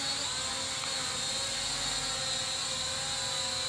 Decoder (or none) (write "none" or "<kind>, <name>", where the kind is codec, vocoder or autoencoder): none